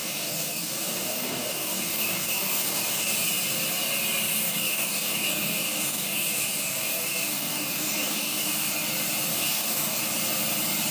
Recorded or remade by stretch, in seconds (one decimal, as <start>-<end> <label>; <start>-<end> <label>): 0.0-3.1 remade; 3.1-4.4 recorded; 4.4-8.7 remade; 8.7-9.3 recorded; 9.3-10.0 remade; 10.0-10.9 recorded